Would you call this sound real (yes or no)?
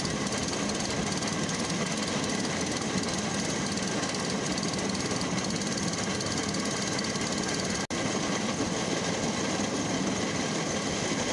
yes